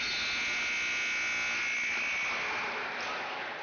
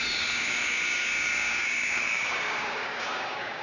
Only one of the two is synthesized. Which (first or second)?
second